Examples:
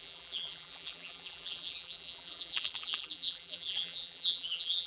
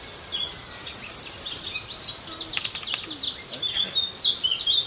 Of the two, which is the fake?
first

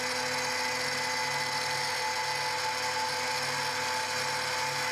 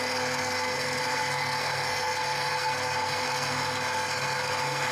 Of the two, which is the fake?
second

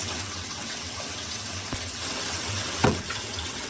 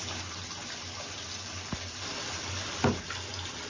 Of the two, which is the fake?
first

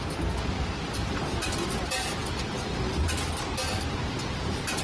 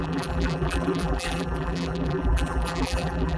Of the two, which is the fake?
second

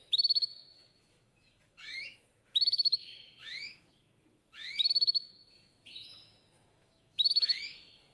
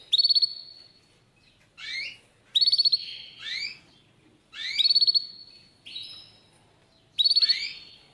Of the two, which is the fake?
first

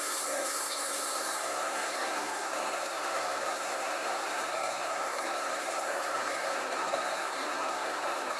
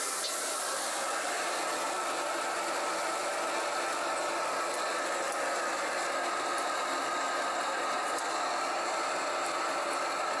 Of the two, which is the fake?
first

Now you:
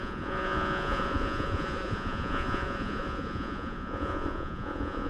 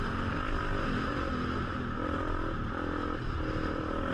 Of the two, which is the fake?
first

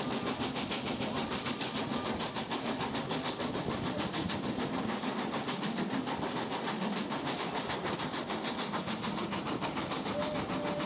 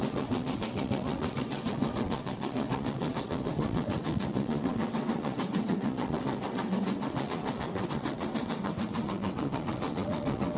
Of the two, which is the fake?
second